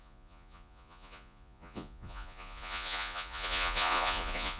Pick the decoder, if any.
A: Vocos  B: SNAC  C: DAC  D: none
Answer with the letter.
A